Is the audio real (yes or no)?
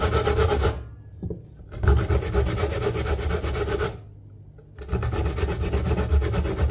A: yes